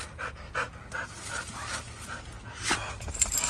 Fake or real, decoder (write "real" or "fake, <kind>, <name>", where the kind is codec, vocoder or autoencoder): real